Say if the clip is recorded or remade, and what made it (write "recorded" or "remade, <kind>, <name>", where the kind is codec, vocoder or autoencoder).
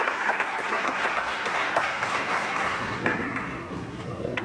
remade, codec, SNAC